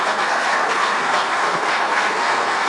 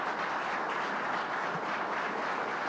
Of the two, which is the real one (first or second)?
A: second